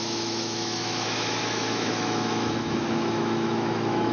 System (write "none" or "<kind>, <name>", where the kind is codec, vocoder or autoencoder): autoencoder, DAC-VAE